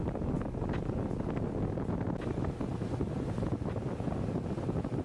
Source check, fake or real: real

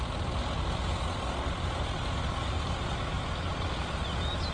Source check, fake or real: real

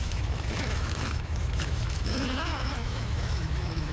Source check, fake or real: fake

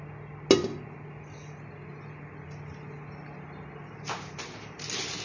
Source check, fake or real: real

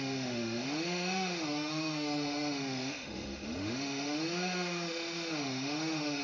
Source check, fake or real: fake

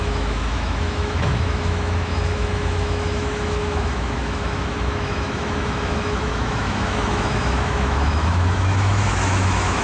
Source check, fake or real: fake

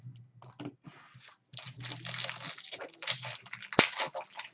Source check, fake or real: real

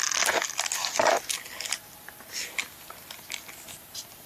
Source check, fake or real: real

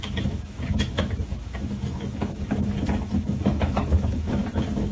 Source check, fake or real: fake